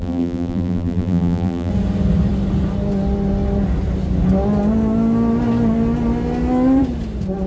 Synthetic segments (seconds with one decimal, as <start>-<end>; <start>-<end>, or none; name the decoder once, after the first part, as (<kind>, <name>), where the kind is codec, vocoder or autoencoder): 0.0-1.7 (vocoder, BigVGAN v2)